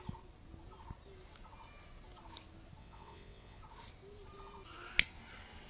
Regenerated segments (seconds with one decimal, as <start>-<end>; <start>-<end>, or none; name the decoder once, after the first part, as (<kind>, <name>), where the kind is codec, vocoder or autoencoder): 2.8-3.6 (vocoder, WaveNeXt)